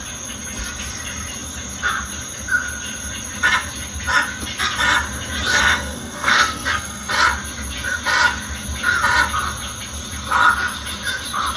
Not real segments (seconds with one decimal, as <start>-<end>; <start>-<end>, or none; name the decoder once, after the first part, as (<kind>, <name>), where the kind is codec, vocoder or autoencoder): 5.5-7.1 (codec, SNAC)